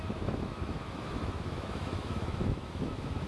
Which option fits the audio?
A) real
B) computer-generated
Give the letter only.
B